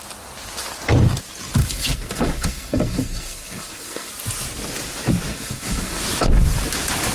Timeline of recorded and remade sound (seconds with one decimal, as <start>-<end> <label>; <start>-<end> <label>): 0.0-1.6 recorded; 1.6-4.1 remade; 4.1-5.3 recorded; 5.3-6.0 remade; 6.0-7.1 recorded